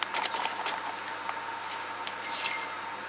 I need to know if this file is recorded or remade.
recorded